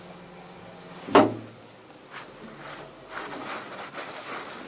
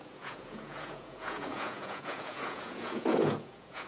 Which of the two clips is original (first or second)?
first